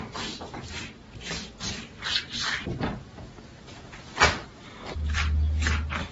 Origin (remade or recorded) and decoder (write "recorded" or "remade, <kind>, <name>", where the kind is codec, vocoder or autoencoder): recorded